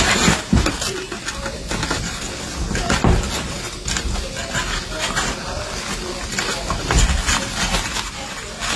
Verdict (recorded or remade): recorded